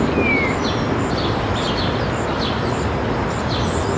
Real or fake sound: real